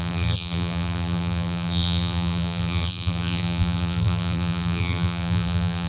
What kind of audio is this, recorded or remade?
remade